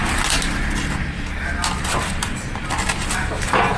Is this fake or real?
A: real